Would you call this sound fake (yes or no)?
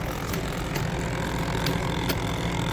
no